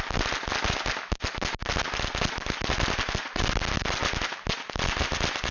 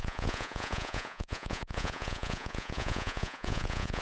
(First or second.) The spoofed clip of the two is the second